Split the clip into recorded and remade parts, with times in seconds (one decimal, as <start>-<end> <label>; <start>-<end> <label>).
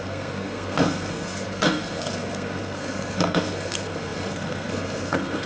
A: 0.0-5.5 remade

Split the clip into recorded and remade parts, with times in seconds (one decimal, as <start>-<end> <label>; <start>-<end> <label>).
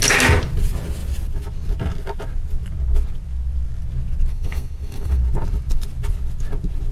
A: 0.0-4.3 recorded; 4.3-5.2 remade; 5.2-6.9 recorded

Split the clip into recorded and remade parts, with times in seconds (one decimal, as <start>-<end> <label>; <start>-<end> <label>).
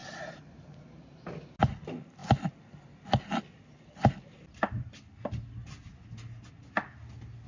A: 0.0-7.5 recorded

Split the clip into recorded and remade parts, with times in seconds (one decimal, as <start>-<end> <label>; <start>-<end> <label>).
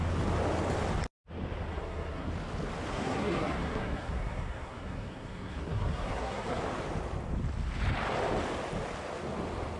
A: 0.0-1.7 recorded; 1.7-2.3 remade; 2.3-2.9 recorded; 2.9-6.6 remade; 6.6-9.8 recorded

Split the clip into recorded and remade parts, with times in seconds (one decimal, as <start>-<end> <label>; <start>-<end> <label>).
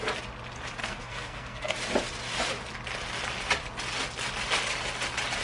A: 0.0-0.8 recorded; 0.8-1.7 remade; 1.7-5.4 recorded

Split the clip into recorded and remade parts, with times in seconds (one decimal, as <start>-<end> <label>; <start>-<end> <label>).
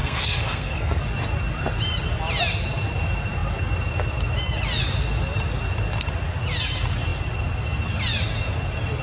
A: 0.0-1.0 remade; 1.0-9.0 recorded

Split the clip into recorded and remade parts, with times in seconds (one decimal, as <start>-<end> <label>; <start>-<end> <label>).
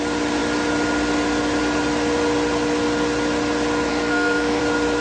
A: 0.0-3.9 recorded; 3.9-4.6 remade; 4.6-5.0 recorded